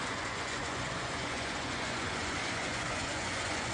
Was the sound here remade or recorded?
remade